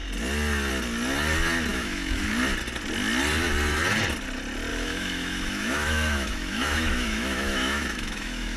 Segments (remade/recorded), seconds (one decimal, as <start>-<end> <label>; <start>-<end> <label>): 0.0-1.7 recorded; 1.7-2.3 remade; 2.3-4.7 recorded; 4.7-8.6 remade